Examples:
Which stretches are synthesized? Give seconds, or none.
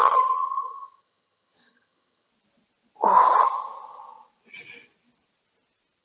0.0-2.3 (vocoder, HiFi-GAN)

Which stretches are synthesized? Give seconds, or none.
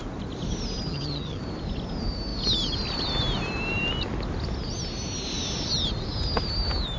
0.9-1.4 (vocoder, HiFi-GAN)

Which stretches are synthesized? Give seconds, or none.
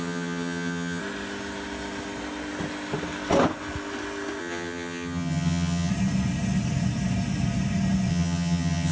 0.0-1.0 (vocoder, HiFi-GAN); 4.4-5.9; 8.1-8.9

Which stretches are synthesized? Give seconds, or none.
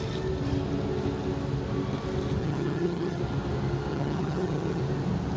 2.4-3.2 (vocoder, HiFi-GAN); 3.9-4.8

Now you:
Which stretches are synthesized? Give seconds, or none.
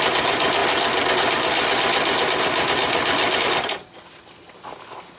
none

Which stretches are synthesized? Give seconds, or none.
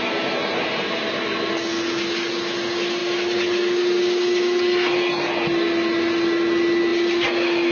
none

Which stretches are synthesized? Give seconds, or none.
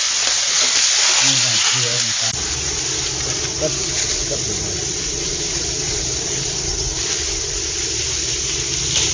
none